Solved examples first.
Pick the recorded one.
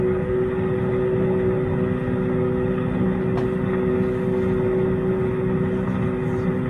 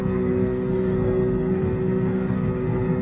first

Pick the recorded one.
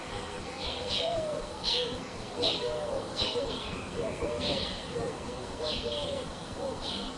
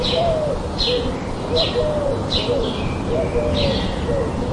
second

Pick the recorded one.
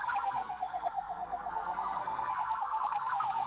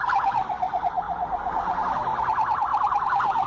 second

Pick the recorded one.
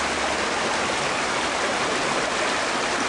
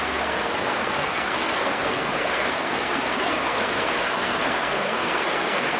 first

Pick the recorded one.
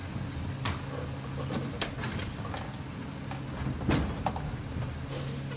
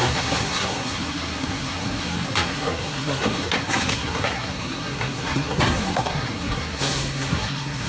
first